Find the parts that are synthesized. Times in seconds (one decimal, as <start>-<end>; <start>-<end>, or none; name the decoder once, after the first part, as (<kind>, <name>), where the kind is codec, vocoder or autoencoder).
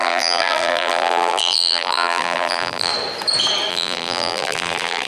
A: 0.0-2.9 (vocoder, BigVGAN v2); 3.7-5.1